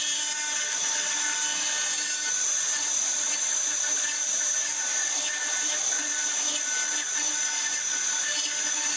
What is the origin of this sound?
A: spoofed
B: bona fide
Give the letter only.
B